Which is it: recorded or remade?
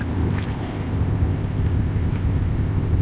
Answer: remade